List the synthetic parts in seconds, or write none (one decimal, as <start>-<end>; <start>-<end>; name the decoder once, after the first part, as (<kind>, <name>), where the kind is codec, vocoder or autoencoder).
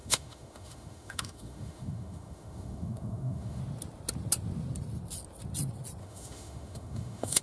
0.0-3.6 (autoencoder, DAC-VAE); 6.0-7.4